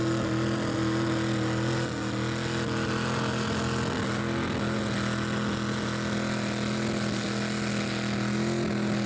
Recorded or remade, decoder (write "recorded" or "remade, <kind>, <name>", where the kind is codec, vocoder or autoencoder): recorded